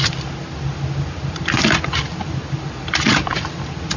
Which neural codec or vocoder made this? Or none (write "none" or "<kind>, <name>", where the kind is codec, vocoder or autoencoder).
none